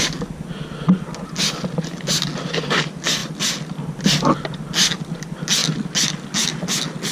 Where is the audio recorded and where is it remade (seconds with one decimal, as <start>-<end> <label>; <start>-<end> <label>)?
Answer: 0.0-7.1 recorded